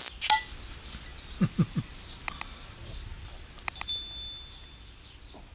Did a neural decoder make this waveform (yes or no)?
no